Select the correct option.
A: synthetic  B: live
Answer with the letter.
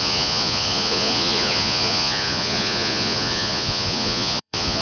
A